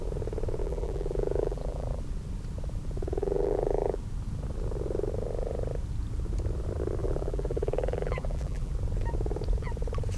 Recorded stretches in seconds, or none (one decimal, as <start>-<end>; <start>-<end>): 0.0-0.6; 2.0-3.2; 4.0-7.0; 8.7-10.2